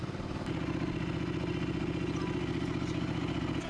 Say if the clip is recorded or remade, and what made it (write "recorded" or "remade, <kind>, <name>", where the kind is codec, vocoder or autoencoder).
recorded